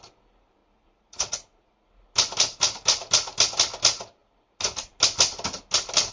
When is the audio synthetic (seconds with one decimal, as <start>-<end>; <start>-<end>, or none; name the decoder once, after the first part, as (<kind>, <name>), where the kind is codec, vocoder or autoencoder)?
0.6-1.9 (vocoder, Vocos)